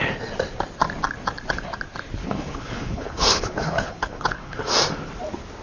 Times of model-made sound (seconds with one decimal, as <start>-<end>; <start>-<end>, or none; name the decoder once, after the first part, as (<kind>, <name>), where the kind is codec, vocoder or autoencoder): 2.2-4.6 (codec, HILCodec)